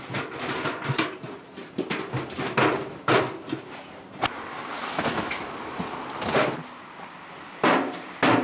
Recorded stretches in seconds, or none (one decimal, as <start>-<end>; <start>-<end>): 0.0-4.8; 5.4-8.4